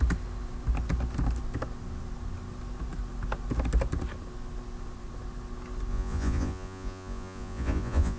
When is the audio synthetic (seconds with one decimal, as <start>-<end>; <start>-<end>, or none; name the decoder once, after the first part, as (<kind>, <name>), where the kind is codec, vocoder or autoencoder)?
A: 5.9-8.2 (vocoder, Vocos)